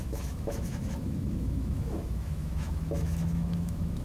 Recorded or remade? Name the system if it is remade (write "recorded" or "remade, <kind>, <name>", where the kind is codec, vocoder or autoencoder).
remade, autoencoder, DAC-VAE